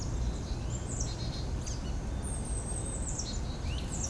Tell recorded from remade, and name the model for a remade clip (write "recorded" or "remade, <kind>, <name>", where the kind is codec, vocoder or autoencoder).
recorded